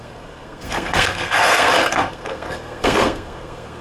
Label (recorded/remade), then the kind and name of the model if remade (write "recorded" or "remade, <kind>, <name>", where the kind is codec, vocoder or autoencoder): remade, codec, SNAC